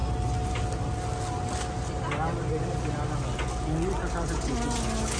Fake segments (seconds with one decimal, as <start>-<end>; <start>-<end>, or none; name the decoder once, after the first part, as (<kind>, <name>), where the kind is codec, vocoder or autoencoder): none